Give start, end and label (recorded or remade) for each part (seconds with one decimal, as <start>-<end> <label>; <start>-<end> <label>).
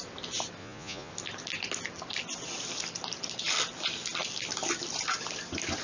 0.0-0.6 recorded; 0.6-1.1 remade; 1.1-5.8 recorded